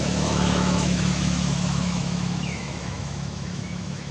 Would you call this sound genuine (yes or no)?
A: no